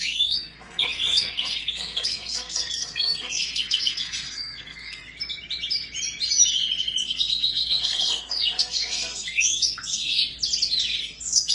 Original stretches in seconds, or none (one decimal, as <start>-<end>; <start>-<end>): 5.0-7.0; 10.2-11.0